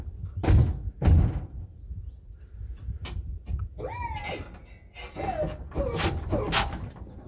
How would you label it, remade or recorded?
recorded